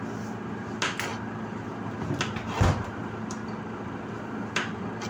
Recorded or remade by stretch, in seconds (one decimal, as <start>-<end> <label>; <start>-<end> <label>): 0.0-1.1 recorded; 1.1-4.2 remade; 4.2-5.1 recorded